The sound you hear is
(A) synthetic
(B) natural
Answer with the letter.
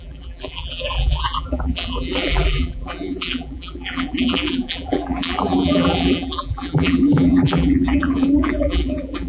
A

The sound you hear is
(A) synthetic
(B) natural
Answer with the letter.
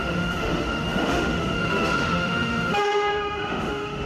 A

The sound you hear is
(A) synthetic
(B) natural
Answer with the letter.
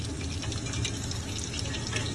B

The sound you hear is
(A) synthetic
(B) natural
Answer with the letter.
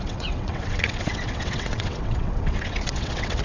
A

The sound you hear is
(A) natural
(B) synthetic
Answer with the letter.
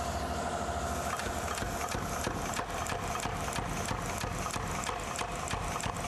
A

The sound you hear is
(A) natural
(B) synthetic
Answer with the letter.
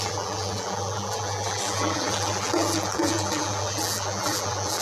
B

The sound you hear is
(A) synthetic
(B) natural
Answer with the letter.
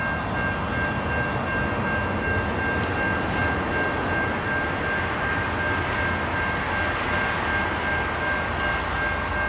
B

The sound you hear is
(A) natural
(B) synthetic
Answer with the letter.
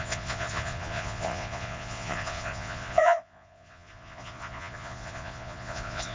B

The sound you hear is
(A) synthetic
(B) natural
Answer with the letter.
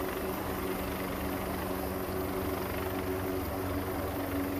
B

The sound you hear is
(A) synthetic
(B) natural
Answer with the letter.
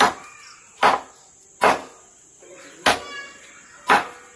B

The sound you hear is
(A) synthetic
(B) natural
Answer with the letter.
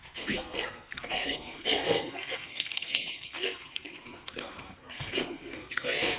A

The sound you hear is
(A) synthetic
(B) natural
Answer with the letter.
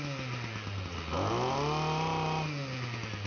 B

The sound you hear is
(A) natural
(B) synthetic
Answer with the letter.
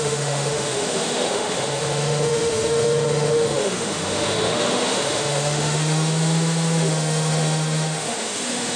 B